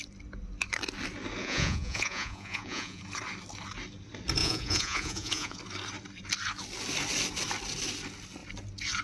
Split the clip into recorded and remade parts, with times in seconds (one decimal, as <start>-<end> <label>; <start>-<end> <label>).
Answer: 0.0-1.4 recorded; 1.4-3.0 remade; 3.0-4.4 recorded; 4.4-5.6 remade; 5.6-9.0 recorded